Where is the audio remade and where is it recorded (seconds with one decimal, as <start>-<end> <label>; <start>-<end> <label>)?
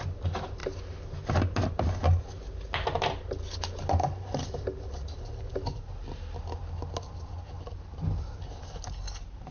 0.0-9.5 recorded